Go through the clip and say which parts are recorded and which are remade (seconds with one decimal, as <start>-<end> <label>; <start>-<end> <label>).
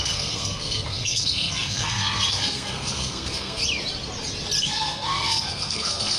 0.0-3.6 remade; 3.6-4.6 recorded; 4.6-6.2 remade